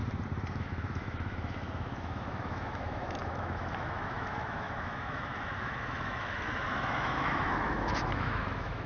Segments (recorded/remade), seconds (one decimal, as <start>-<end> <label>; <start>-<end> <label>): 0.0-0.6 recorded; 0.6-8.9 remade